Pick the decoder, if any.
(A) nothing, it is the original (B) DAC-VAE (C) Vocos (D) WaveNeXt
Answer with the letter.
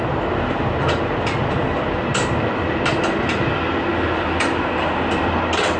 A